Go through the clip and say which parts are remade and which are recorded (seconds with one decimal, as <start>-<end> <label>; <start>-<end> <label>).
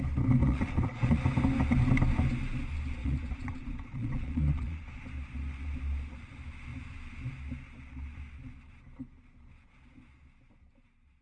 0.0-0.4 recorded; 0.4-1.2 remade; 1.2-3.0 recorded; 3.0-5.0 remade; 5.0-11.2 recorded